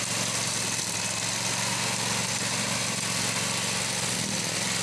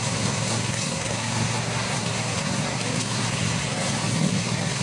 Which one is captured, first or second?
first